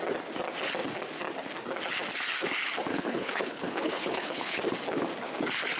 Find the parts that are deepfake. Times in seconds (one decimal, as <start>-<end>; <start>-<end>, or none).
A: 2.9-4.6